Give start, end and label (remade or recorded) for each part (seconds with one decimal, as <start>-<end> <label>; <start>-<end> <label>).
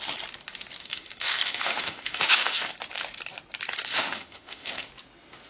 0.0-0.8 recorded; 0.8-2.7 remade; 2.7-3.9 recorded; 3.9-4.9 remade; 4.9-5.5 recorded